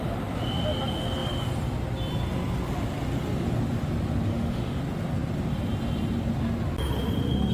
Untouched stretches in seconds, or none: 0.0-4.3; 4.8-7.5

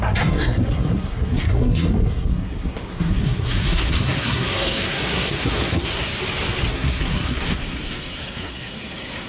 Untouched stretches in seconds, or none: 6.1-6.7

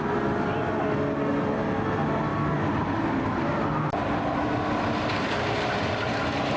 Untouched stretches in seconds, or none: 0.0-6.6

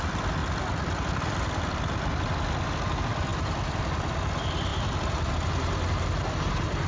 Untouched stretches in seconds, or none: 0.0-0.4; 2.2-3.3; 3.8-6.9

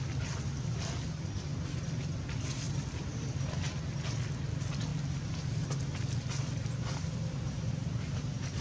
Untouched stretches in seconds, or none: 0.0-8.6

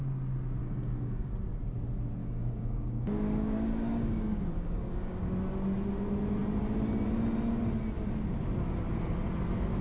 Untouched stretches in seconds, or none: 0.0-0.6; 1.3-2.2; 5.3-9.8

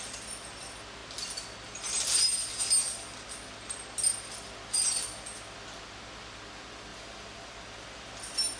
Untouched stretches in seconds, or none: 0.0-6.9; 8.1-8.6

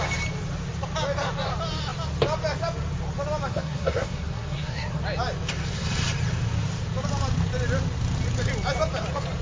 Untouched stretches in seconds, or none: 0.0-3.5; 5.0-9.4